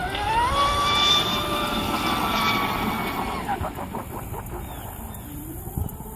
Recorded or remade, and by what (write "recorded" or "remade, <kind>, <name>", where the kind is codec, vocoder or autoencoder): recorded